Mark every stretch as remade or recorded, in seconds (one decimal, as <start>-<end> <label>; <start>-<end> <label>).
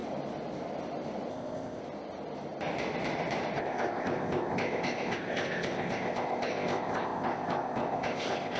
0.0-1.3 recorded; 1.3-1.8 remade; 1.8-3.6 recorded; 3.6-8.6 remade